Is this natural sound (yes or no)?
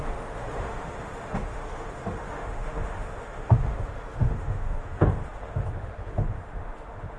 no